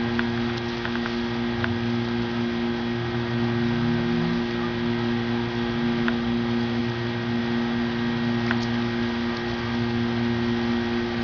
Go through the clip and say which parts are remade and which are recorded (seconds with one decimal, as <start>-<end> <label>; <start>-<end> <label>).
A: 0.0-11.2 recorded